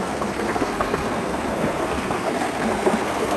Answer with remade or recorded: remade